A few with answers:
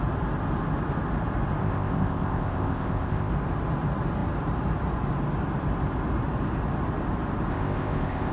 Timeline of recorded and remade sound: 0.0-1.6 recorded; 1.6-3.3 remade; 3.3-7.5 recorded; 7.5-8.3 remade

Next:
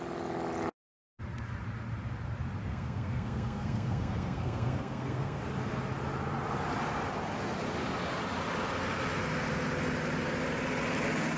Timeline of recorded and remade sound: 0.0-2.7 recorded; 2.7-5.4 remade; 5.4-11.4 recorded